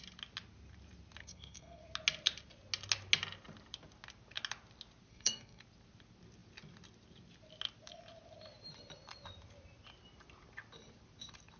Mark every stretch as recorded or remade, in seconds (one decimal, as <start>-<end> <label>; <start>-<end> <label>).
0.0-1.2 recorded; 1.2-1.8 remade; 1.8-5.1 recorded; 5.1-5.6 remade; 5.6-11.6 recorded